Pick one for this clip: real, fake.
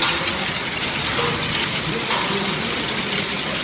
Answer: real